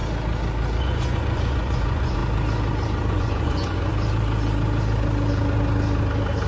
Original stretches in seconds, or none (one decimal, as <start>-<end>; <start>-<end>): 0.0-0.8; 2.2-3.1; 3.9-6.5